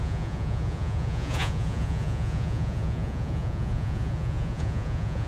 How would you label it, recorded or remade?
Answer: remade